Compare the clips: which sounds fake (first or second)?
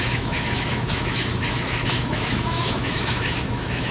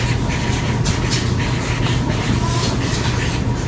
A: first